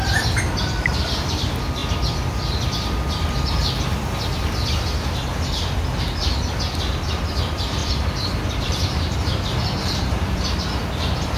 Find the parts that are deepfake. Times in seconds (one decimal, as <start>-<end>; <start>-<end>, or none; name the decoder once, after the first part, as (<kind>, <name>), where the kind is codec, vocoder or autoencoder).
7.8-10.5 (vocoder, BigVGAN v2)